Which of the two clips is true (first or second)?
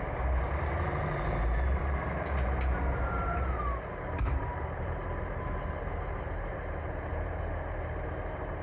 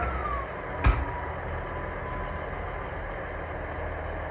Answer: second